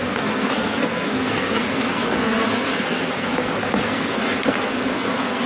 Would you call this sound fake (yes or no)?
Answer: yes